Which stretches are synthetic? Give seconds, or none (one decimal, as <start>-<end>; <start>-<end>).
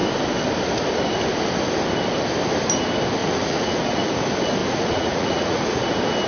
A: 3.2-4.1; 4.6-5.8